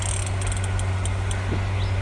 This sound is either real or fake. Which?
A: real